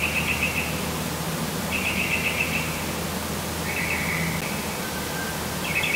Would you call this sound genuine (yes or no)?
yes